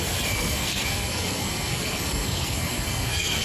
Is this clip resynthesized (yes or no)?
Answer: yes